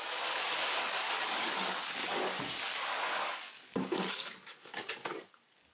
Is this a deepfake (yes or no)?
yes